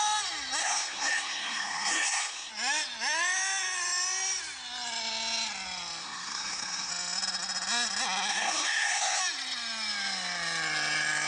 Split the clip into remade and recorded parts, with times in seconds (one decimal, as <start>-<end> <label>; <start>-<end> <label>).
0.0-0.6 recorded; 0.6-2.5 remade; 2.5-6.0 recorded; 6.0-6.9 remade; 6.9-8.3 recorded; 8.3-9.2 remade; 9.2-11.3 recorded